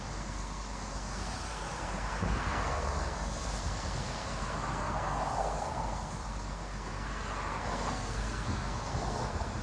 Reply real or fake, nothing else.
fake